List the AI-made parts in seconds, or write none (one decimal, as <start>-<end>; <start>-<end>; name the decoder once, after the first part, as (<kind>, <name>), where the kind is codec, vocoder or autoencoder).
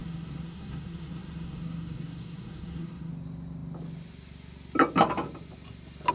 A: 0.0-3.1 (codec, SNAC)